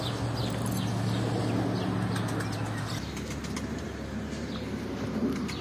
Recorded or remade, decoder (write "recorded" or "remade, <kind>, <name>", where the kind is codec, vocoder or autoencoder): recorded